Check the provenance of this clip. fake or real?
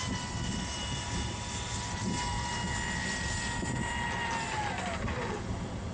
real